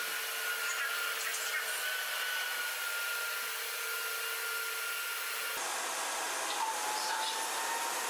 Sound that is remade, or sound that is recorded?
recorded